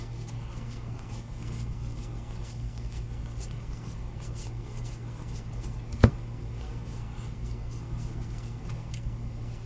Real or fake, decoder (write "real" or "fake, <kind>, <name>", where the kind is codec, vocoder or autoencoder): fake, codec, SNAC